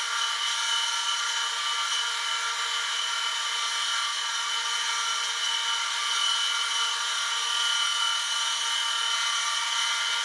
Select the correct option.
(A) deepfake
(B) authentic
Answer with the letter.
B